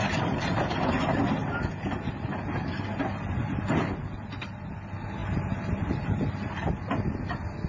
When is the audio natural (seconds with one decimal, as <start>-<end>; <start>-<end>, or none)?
0.0-5.2; 6.7-7.7